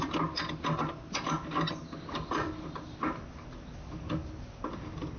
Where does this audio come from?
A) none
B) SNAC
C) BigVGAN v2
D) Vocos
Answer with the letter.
A